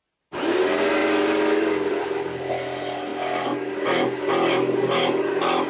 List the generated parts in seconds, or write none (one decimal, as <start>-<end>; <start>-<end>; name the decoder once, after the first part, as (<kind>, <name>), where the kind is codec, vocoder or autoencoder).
1.0-2.5 (vocoder, BigVGAN v2)